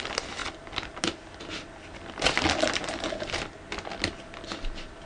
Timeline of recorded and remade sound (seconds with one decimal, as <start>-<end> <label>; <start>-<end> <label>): 0.0-5.1 recorded